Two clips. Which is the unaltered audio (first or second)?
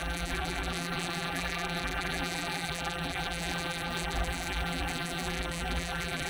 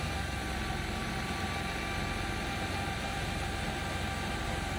second